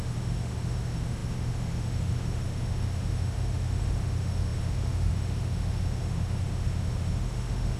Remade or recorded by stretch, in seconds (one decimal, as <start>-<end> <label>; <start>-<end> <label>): 0.0-7.8 remade